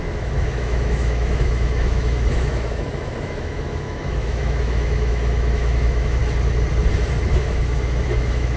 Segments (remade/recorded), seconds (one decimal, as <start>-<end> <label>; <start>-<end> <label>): 0.0-6.2 remade; 6.2-7.3 recorded; 7.3-8.6 remade